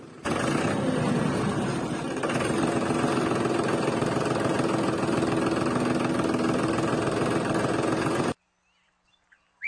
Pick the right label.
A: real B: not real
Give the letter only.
A